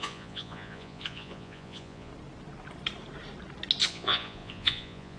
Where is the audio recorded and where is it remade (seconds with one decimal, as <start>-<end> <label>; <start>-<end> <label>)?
0.0-2.1 remade; 2.1-3.9 recorded; 3.9-5.2 remade